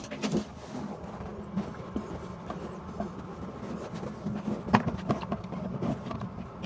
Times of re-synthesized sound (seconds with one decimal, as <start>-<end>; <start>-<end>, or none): none